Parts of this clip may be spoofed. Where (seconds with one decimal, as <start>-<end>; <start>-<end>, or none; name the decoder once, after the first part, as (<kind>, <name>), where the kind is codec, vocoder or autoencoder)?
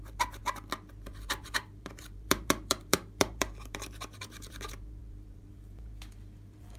0.0-0.4 (vocoder, BigVGAN v2); 0.9-6.8